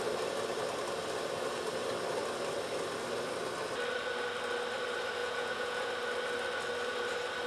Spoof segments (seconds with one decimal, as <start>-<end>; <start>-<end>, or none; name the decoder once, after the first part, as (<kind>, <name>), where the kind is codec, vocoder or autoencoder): 5.2-5.9 (vocoder, Vocos)